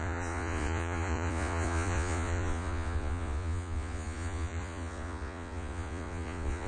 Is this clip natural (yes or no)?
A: no